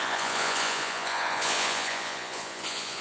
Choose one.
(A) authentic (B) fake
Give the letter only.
B